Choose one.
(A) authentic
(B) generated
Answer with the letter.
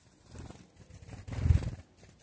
A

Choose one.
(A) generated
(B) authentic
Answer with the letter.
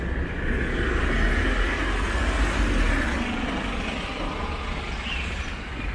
B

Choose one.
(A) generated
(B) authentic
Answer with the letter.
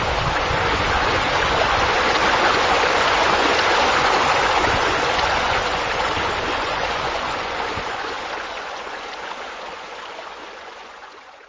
A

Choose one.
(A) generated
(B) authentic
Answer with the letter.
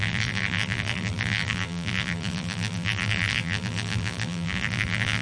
A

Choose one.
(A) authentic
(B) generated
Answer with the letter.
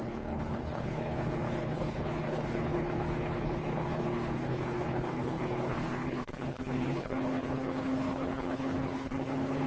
B